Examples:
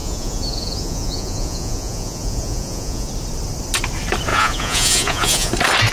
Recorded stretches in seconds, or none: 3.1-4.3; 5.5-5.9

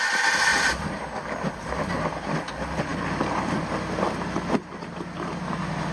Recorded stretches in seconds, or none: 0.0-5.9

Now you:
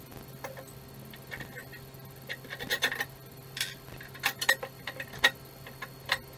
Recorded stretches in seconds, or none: 0.0-6.4